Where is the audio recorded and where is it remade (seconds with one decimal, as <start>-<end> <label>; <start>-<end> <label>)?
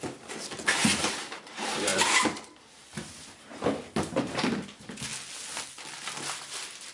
0.0-5.1 remade; 5.1-6.3 recorded; 6.3-6.9 remade